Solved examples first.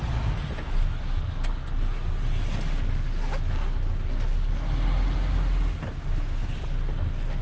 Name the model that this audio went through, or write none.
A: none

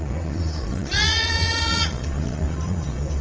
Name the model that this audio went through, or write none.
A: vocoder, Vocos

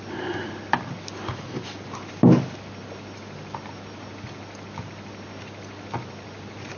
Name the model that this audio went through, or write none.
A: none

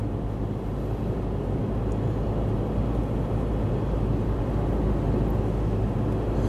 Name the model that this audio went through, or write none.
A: none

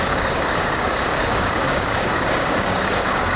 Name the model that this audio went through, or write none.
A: codec, DAC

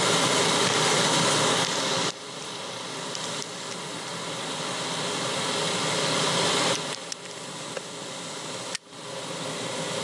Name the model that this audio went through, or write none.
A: none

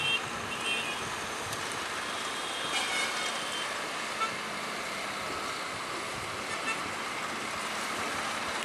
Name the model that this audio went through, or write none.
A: none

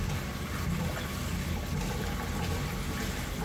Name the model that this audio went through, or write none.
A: none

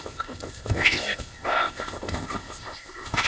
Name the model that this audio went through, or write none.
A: codec, ZipCodec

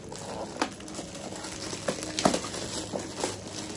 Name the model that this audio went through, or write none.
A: none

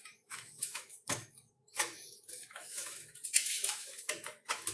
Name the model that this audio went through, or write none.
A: autoencoder, DAC-VAE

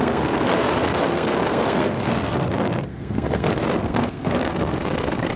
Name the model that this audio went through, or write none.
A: codec, SNAC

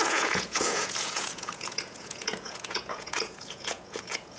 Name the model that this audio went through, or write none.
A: vocoder, Vocos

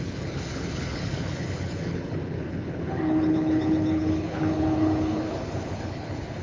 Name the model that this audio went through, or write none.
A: codec, HILCodec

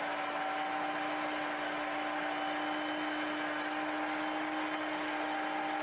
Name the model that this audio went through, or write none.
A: none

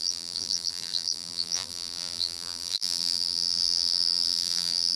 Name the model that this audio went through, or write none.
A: vocoder, BigVGAN v2